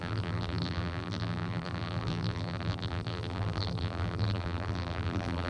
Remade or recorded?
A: remade